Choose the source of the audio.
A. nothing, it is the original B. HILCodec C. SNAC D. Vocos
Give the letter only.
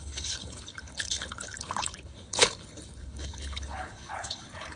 B